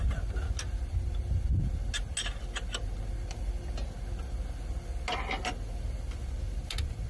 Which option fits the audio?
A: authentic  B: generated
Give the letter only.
A